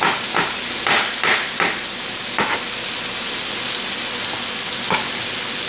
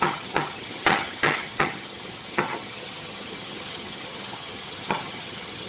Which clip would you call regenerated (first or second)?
second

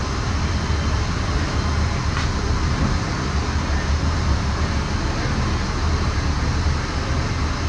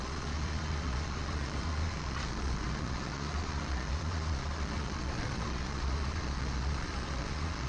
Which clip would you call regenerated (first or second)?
second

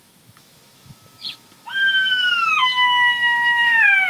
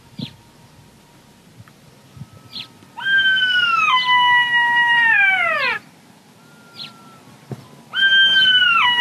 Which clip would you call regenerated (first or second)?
first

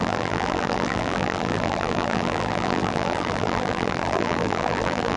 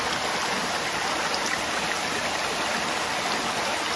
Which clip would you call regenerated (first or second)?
first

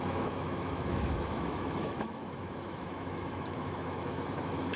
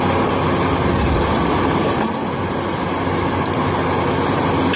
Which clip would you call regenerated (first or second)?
first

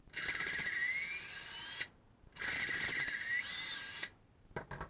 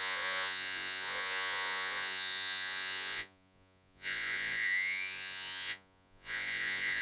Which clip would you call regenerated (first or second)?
second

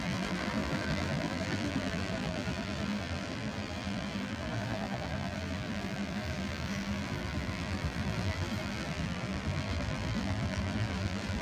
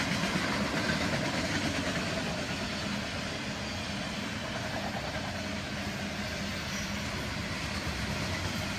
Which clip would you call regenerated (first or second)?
first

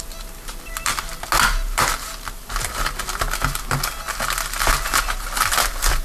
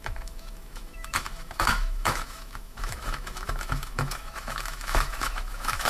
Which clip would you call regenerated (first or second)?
second